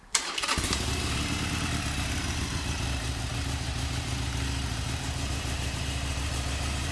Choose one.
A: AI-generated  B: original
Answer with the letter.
A